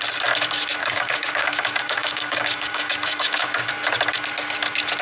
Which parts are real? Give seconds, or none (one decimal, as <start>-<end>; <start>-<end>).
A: 0.0-0.8; 3.7-5.0